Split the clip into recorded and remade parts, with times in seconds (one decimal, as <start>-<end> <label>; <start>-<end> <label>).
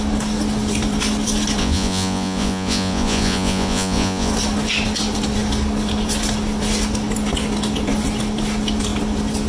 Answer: 0.0-1.6 recorded; 1.6-4.3 remade; 4.3-9.5 recorded